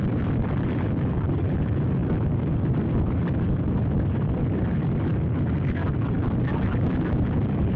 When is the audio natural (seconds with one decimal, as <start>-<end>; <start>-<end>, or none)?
0.0-7.8